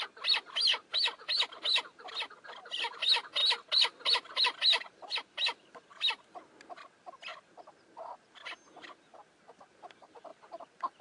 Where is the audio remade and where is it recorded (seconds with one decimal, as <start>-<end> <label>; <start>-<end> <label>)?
0.0-11.0 recorded